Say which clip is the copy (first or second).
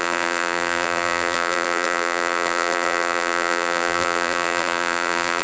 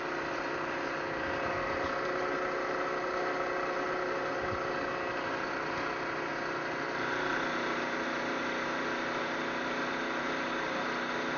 first